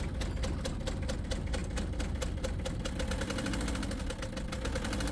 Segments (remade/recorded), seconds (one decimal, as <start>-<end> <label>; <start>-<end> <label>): 0.0-5.1 recorded